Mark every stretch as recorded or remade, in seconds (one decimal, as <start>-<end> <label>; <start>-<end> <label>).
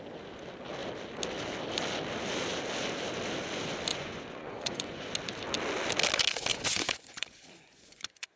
0.0-3.9 recorded; 3.9-5.1 remade; 5.1-6.5 recorded; 6.5-8.4 remade